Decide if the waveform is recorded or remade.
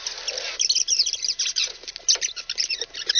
recorded